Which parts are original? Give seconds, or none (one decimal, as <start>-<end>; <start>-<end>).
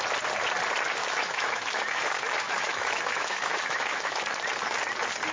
0.0-1.0; 4.2-5.3